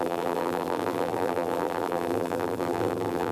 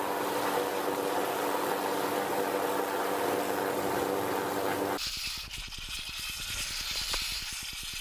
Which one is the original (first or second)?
second